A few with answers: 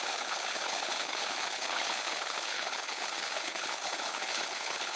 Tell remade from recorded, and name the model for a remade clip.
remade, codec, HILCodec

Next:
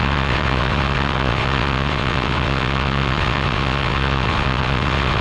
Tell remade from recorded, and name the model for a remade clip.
remade, vocoder, WaveNeXt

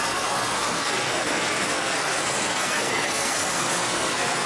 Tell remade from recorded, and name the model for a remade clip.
remade, codec, SNAC